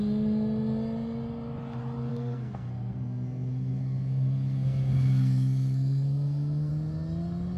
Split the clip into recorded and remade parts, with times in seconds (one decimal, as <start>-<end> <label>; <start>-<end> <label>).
0.0-2.1 recorded; 2.1-6.7 remade; 6.7-7.6 recorded